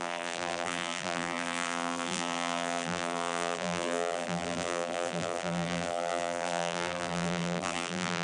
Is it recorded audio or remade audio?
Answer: remade